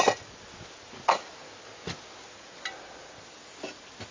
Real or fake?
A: real